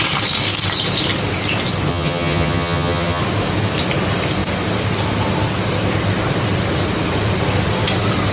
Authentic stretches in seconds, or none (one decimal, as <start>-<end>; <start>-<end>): 0.0-1.9; 3.2-8.3